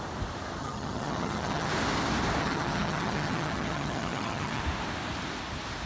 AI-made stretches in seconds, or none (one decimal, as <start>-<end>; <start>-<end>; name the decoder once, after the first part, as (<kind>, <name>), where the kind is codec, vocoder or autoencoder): 0.6-1.7 (vocoder, HiFi-GAN); 2.4-4.6